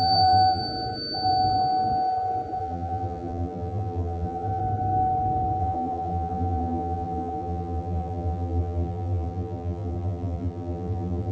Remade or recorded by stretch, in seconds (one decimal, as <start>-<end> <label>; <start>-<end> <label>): 0.0-0.6 remade; 0.6-2.6 recorded; 2.6-4.6 remade; 4.6-5.6 recorded; 5.6-11.3 remade